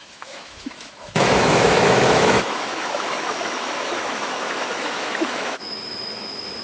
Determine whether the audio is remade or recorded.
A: remade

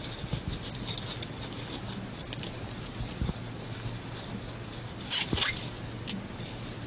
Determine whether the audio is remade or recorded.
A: recorded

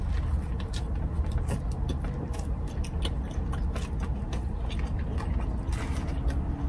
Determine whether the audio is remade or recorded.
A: recorded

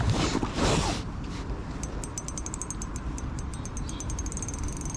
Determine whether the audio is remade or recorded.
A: recorded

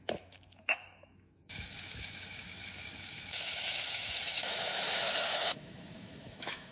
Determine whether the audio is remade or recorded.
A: remade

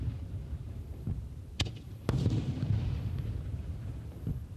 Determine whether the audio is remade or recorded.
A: recorded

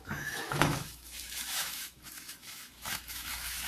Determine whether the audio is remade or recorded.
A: remade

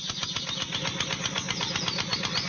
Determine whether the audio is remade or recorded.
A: recorded